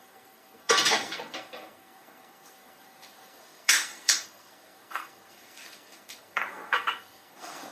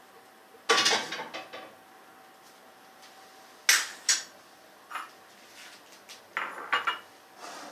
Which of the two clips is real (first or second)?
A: second